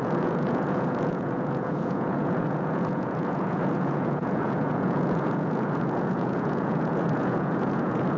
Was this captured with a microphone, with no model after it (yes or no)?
no